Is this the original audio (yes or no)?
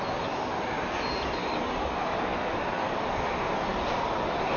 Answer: yes